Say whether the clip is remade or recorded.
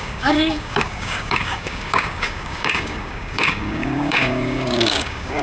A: remade